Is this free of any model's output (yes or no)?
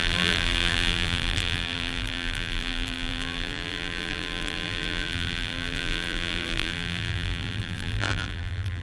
no